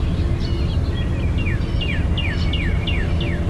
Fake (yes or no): no